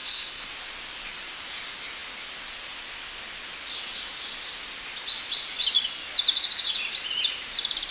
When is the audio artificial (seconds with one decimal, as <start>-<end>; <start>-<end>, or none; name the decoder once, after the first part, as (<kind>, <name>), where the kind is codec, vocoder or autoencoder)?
0.0-0.5 (codec, SNAC)